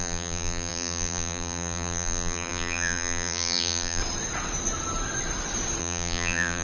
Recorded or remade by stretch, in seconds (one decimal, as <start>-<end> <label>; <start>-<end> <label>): 0.0-4.0 remade; 4.0-5.8 recorded; 5.8-6.6 remade